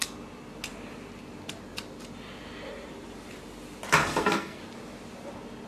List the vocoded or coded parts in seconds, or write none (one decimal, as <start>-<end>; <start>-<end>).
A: 4.0-4.6